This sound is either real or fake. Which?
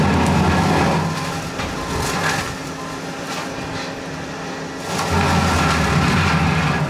real